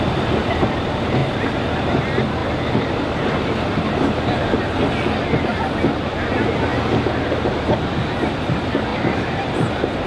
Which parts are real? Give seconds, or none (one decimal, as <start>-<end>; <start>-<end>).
0.0-8.9

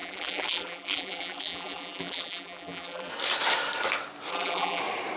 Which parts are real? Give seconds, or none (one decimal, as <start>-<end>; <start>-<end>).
3.1-4.3; 4.8-5.2

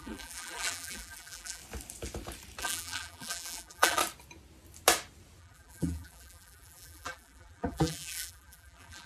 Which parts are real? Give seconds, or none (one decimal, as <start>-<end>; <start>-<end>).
1.6-2.6; 4.0-5.4

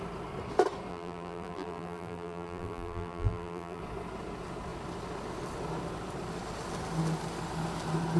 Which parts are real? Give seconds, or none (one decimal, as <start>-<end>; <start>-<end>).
0.0-0.9; 3.8-8.2